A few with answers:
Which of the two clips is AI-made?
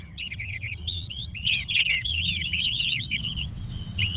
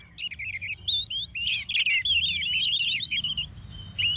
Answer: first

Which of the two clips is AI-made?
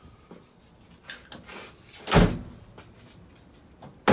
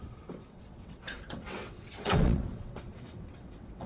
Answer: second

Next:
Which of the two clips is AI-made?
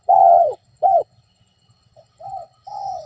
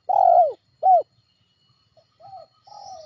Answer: first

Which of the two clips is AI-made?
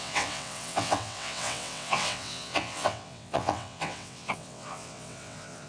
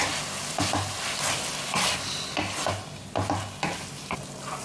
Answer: first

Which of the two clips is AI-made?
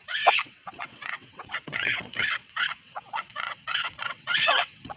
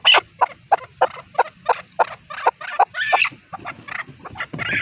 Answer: first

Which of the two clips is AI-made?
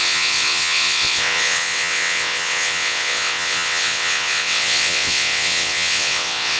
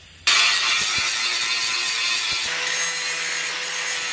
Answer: first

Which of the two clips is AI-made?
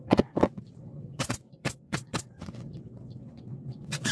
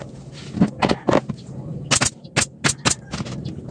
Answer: first